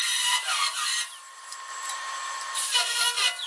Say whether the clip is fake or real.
real